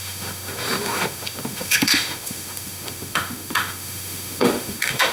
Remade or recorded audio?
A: remade